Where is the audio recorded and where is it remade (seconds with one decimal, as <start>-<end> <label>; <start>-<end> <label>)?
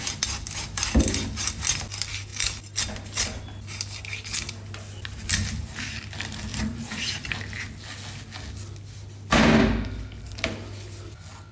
0.0-6.5 recorded; 6.5-7.3 remade; 7.3-11.5 recorded